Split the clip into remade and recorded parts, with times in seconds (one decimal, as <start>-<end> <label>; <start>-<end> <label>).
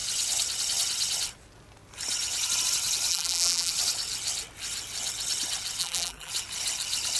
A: 0.0-3.1 recorded; 3.1-3.7 remade; 3.7-5.8 recorded; 5.8-6.3 remade; 6.3-7.2 recorded